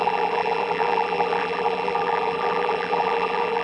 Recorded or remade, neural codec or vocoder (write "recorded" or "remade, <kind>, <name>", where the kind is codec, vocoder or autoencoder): remade, vocoder, BigVGAN v2